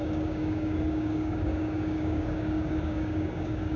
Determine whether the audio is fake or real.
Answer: fake